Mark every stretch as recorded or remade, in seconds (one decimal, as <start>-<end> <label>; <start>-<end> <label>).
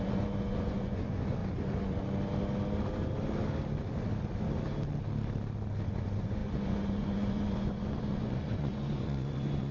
0.0-1.4 remade; 1.4-5.9 recorded; 5.9-9.7 remade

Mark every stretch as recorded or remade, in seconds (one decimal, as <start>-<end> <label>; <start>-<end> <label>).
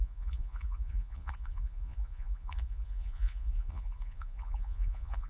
0.0-5.3 remade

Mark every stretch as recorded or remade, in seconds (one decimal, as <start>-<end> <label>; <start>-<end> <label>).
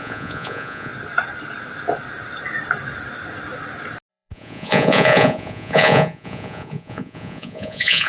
0.0-0.9 remade; 0.9-4.1 recorded; 4.1-8.1 remade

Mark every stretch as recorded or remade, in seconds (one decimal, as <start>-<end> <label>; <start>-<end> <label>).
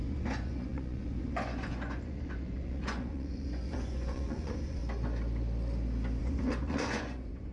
0.0-4.8 remade; 4.8-6.2 recorded; 6.2-7.5 remade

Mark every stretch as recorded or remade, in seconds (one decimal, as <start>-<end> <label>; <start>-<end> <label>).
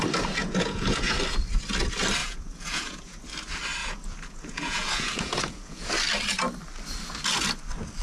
0.0-0.4 recorded; 0.4-1.2 remade; 1.2-2.2 recorded; 2.2-3.2 remade; 3.2-3.8 recorded; 3.8-5.9 remade; 5.9-8.0 recorded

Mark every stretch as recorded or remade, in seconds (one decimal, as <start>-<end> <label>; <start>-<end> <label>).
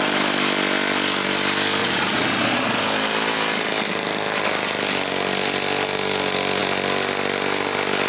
0.0-1.8 recorded; 1.8-2.8 remade; 2.8-8.1 recorded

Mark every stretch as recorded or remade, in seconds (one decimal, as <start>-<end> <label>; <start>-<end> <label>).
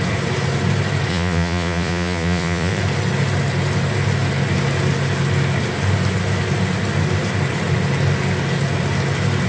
0.0-1.1 recorded; 1.1-2.8 remade; 2.8-9.5 recorded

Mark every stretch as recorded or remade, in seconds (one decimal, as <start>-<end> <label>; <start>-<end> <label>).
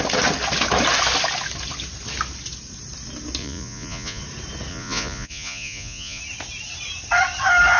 0.0-3.4 recorded; 3.4-4.2 remade; 4.2-4.7 recorded; 4.7-6.2 remade; 6.2-7.8 recorded